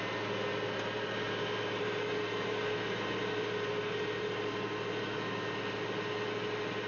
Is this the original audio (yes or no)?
yes